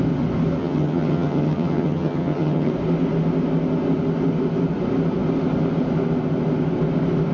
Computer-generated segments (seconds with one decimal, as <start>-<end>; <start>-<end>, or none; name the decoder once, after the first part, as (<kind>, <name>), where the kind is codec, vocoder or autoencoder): 0.6-2.7 (vocoder, HiFi-GAN)

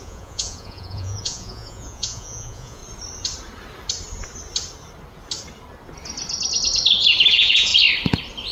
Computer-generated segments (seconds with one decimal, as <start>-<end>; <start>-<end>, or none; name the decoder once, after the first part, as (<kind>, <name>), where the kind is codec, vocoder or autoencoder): 0.0-2.8 (vocoder, Vocos); 7.3-7.7

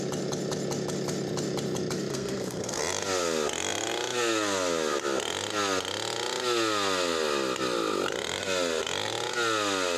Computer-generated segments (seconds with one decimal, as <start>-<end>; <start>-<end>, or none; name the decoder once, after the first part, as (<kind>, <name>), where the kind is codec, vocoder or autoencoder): 2.1-2.8 (codec, SNAC)

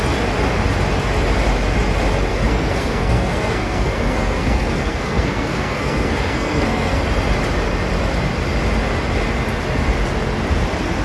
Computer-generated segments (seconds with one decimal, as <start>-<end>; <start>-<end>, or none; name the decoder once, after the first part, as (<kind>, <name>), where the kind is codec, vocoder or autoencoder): 2.3-7.0 (codec, SNAC)

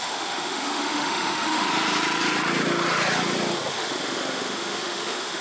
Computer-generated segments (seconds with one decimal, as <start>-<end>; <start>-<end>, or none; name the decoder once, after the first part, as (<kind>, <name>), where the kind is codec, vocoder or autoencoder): 0.0-1.7 (autoencoder, DAC-VAE); 3.7-5.4

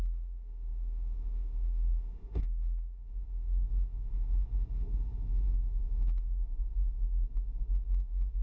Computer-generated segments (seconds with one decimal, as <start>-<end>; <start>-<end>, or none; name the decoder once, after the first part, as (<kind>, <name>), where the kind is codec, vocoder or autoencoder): 0.0-8.4 (autoencoder, DAC-VAE)